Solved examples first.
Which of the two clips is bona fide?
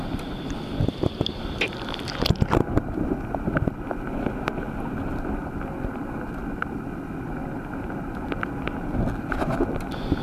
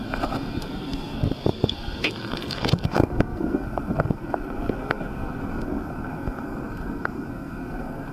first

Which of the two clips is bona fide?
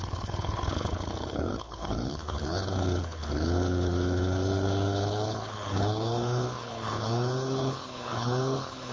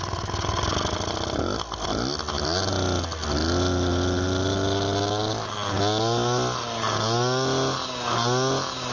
second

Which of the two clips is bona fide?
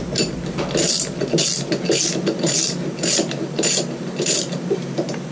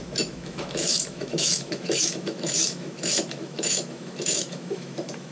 first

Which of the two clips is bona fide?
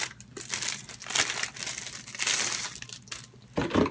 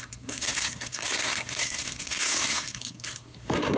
first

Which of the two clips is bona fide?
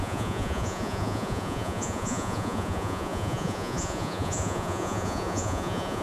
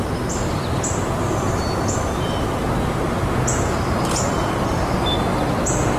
second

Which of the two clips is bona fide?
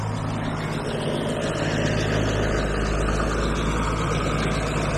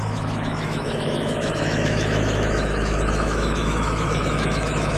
first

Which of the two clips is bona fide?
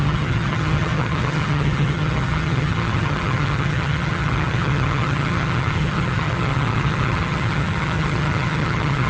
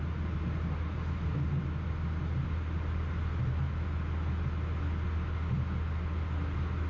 second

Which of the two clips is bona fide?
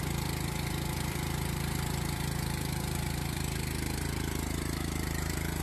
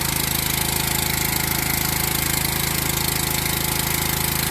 second